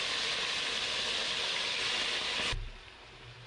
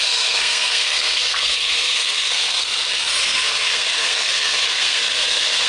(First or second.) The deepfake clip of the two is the second